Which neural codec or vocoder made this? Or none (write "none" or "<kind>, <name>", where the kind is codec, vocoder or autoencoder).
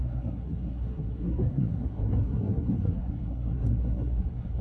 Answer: codec, SNAC